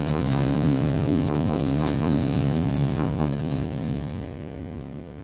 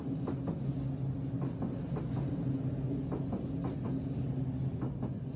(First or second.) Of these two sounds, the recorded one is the second